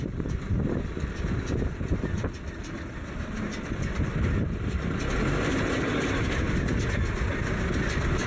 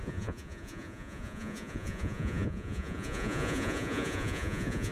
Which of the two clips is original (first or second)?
first